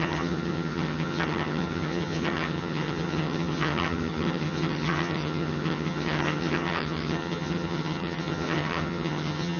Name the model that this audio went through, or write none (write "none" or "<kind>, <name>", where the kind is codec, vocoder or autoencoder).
vocoder, HiFi-GAN